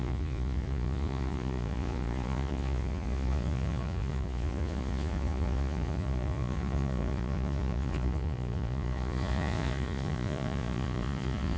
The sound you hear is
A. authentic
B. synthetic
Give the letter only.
B